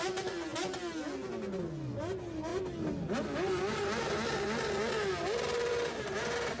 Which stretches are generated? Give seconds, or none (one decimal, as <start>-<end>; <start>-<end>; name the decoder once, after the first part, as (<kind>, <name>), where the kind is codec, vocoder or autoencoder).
none

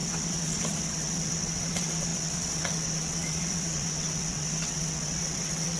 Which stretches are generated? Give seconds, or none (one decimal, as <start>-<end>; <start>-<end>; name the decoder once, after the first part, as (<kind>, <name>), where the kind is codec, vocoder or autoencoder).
0.0-5.8 (vocoder, WaveNeXt)